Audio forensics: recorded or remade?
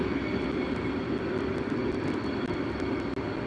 recorded